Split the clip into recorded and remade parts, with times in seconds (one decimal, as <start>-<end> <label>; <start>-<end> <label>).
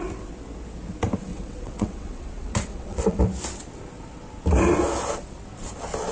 0.0-1.3 recorded; 1.3-3.2 remade; 3.2-6.1 recorded